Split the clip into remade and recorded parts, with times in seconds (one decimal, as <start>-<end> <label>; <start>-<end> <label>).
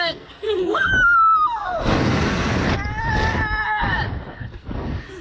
0.0-0.9 remade; 0.9-1.6 recorded; 1.6-2.5 remade; 2.5-4.3 recorded; 4.3-5.2 remade